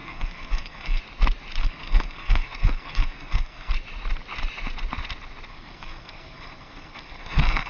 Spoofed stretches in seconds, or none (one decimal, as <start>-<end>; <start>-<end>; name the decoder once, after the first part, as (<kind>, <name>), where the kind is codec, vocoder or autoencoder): 0.0-1.0 (codec, SNAC); 1.6-3.7; 5.5-7.7